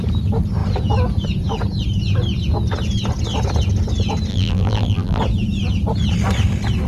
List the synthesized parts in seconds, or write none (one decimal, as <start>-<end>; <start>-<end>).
4.3-5.2